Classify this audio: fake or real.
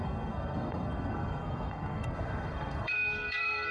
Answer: fake